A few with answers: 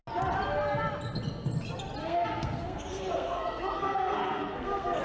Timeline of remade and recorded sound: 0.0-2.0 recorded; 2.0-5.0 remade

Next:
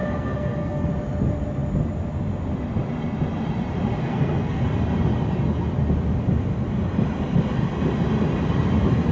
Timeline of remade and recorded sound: 0.0-0.9 remade; 0.9-4.0 recorded; 4.0-4.6 remade; 4.6-9.1 recorded

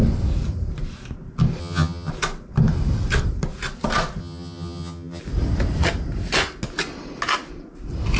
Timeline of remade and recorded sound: 0.0-1.6 recorded; 1.6-2.1 remade; 2.1-4.2 recorded; 4.2-5.2 remade; 5.2-8.2 recorded

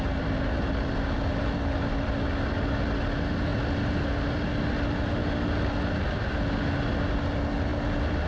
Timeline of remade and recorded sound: 0.0-8.3 recorded

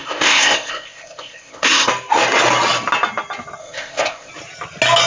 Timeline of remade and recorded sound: 0.0-1.9 remade; 1.9-3.6 recorded; 3.6-4.3 remade; 4.3-5.1 recorded